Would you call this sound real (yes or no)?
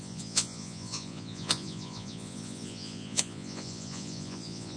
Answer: no